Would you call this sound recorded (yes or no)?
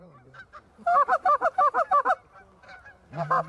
no